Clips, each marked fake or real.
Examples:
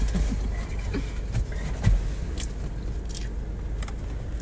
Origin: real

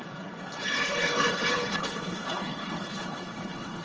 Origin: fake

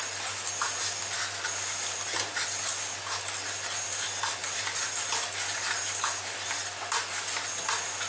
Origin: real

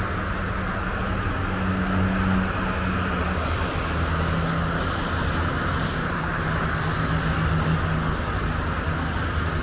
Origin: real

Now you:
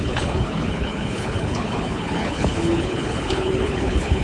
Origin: fake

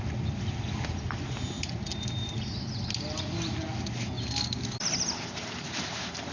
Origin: real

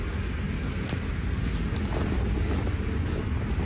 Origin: real